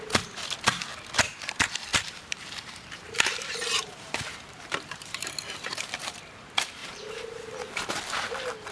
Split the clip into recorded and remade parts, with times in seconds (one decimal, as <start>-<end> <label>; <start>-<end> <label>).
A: 0.0-1.9 recorded; 1.9-6.1 remade; 6.1-6.8 recorded; 6.8-8.0 remade; 8.0-8.7 recorded